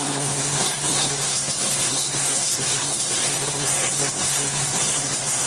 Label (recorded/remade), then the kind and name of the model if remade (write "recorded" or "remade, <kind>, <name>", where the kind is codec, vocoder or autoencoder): remade, codec, SNAC